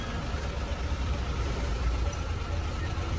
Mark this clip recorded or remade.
recorded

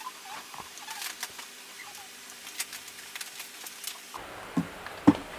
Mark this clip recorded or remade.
recorded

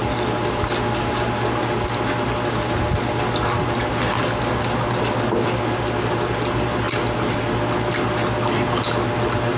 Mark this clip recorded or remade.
recorded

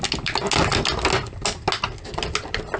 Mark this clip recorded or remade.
recorded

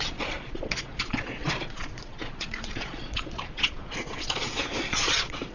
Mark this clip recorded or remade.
remade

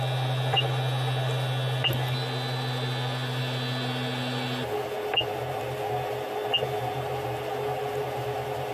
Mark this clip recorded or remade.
recorded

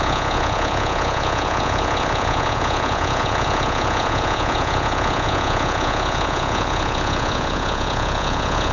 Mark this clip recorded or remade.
remade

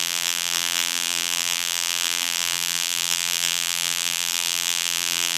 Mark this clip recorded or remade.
remade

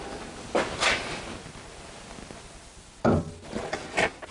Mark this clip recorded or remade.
recorded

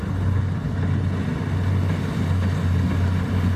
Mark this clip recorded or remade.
recorded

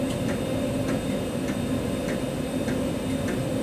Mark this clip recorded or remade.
recorded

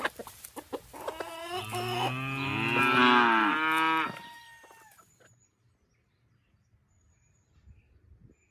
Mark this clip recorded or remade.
recorded